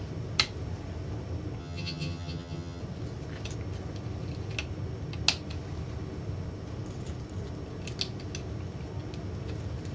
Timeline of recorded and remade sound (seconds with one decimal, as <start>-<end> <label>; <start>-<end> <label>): 0.0-1.6 recorded; 1.6-2.8 remade; 2.8-9.9 recorded